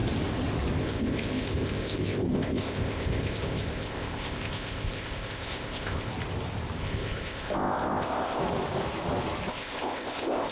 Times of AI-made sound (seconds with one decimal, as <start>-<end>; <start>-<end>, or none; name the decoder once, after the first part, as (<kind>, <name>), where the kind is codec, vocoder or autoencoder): 0.8-6.1 (codec, ZipCodec); 6.8-8.4; 9.5-10.5